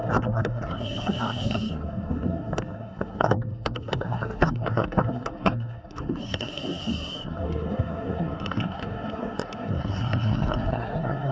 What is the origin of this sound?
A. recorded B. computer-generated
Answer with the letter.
B